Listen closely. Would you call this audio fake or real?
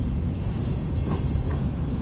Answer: fake